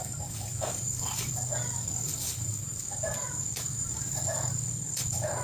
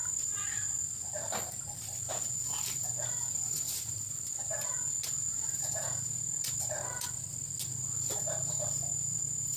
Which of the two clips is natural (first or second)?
second